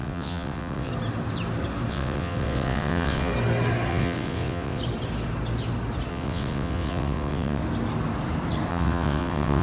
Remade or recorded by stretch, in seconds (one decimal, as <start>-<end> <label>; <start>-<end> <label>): 0.0-0.9 remade; 0.9-1.9 recorded; 1.9-3.3 remade; 3.3-3.9 recorded; 3.9-4.8 remade; 4.8-6.1 recorded; 6.1-7.6 remade; 7.6-8.7 recorded; 8.7-9.6 remade